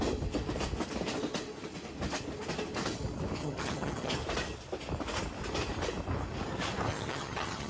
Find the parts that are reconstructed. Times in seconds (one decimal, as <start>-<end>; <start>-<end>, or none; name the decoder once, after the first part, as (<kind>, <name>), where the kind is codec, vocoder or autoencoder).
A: 3.4-4.1 (vocoder, HiFi-GAN); 6.9-7.7